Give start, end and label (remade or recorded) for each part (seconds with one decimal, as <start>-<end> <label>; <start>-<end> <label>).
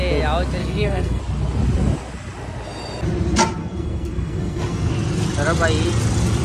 0.0-0.6 recorded; 0.6-1.2 remade; 1.2-3.6 recorded; 3.6-4.9 remade; 4.9-6.4 recorded